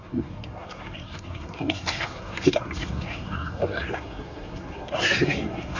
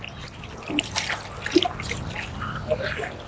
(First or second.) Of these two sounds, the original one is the second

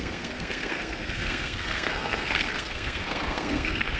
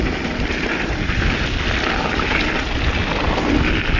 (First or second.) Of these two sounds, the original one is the second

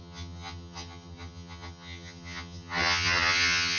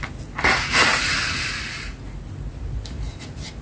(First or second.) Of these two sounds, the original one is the second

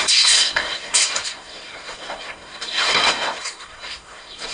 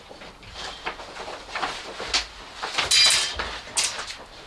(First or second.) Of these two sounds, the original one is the second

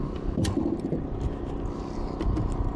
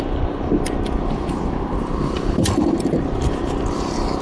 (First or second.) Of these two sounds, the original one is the first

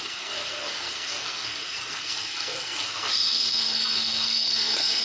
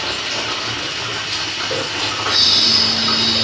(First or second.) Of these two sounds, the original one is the second